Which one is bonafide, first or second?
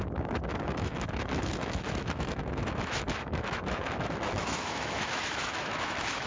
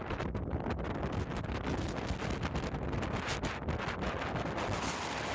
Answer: second